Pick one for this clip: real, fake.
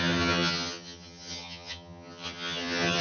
fake